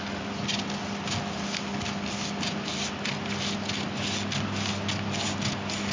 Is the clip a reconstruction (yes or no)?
no